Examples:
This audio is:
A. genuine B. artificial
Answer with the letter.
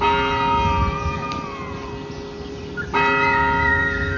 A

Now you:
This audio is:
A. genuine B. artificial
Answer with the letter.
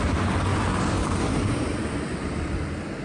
A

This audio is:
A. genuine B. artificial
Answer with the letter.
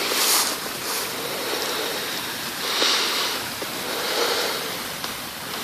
B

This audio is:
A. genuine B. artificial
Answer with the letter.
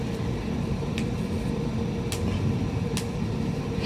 A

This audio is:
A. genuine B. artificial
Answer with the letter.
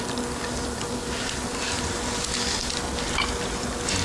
A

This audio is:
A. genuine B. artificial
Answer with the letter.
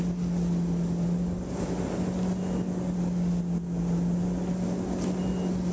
A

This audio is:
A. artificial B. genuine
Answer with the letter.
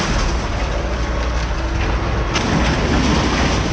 B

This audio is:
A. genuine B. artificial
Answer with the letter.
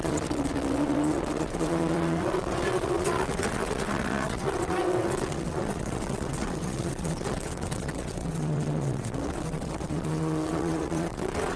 B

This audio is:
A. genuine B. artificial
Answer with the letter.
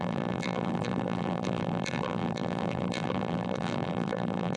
B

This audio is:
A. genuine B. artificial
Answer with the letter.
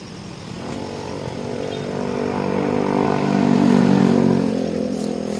A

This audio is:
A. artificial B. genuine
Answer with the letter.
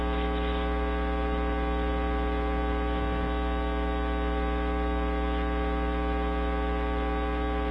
B